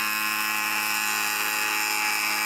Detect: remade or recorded recorded